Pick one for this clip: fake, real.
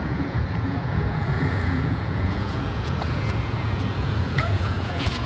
fake